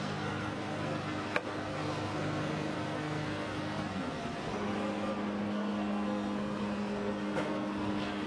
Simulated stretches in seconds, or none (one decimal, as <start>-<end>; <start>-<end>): 0.0-4.2; 5.4-8.3